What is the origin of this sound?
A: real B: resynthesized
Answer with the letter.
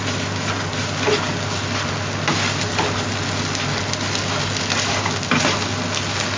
A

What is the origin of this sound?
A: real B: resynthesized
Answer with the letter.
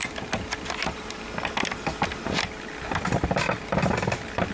A